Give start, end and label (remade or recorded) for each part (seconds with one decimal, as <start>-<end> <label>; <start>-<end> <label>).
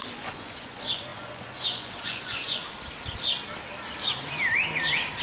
0.0-2.6 remade; 2.6-5.2 recorded